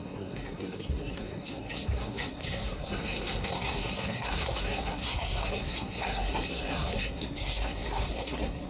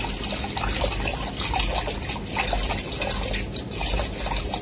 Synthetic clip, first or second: first